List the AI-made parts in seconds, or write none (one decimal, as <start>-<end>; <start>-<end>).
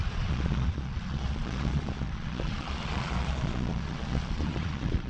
0.0-5.1